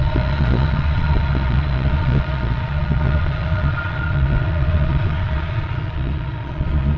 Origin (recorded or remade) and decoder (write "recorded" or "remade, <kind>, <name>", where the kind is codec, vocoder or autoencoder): remade, vocoder, Vocos